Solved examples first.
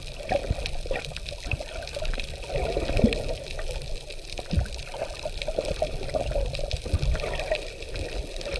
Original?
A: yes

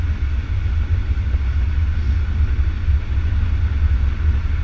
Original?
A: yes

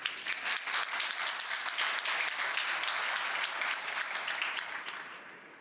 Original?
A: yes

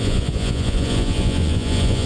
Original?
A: no